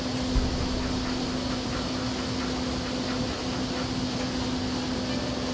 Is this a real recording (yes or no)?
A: yes